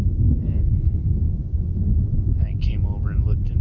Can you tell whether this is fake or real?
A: real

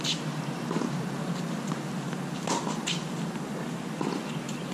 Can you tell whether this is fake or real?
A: real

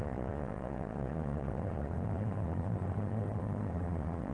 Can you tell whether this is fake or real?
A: fake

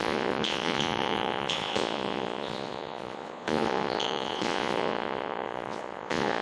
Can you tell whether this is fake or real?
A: fake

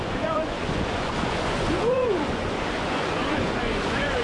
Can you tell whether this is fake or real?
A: fake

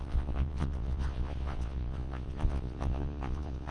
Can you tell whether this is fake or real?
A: fake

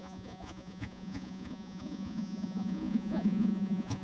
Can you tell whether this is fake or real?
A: fake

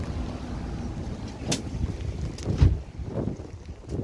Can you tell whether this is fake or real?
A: real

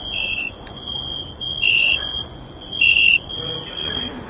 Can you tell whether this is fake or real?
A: fake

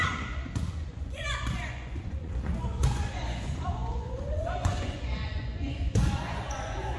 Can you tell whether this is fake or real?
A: fake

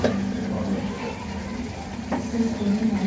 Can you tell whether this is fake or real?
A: real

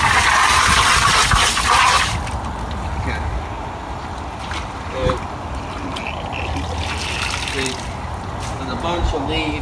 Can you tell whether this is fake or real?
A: real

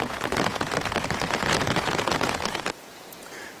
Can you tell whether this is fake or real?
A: fake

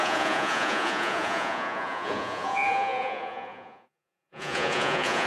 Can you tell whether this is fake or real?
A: fake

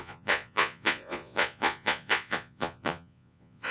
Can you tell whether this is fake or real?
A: fake